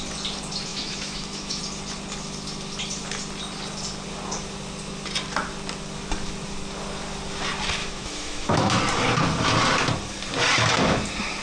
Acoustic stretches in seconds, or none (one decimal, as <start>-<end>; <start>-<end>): 0.0-0.7; 1.6-7.8; 8.8-11.4